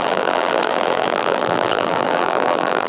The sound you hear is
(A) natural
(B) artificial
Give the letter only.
B